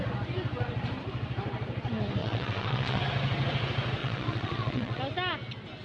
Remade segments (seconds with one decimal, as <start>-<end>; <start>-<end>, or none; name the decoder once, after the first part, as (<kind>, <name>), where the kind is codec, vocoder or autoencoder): 2.2-3.0 (vocoder, WaveNeXt); 4.0-5.0